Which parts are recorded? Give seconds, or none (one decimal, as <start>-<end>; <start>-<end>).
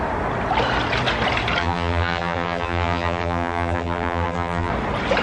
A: 0.0-1.6; 4.7-5.2